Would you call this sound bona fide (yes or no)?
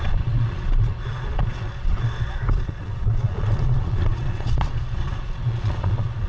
no